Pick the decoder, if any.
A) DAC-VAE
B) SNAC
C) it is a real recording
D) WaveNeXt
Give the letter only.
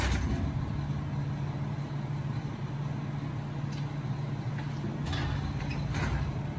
C